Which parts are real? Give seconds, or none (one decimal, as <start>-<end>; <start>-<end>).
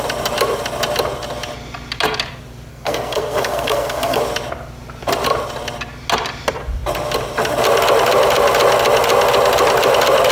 0.0-2.7; 4.2-10.3